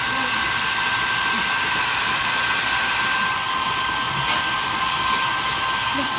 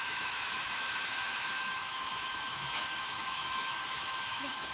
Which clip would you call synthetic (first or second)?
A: second